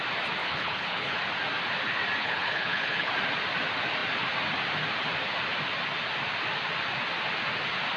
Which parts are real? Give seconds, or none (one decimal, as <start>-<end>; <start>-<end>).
0.0-0.4; 1.2-2.2; 3.1-8.0